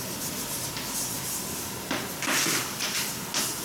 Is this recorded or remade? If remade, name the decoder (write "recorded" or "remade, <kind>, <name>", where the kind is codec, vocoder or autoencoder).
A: recorded